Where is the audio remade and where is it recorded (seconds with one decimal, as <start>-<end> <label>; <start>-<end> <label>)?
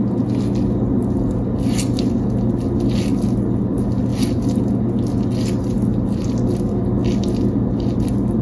0.0-8.4 recorded